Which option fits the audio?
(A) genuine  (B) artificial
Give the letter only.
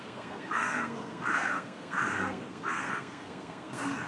B